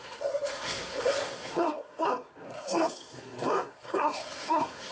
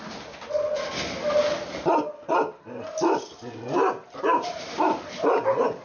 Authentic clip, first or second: second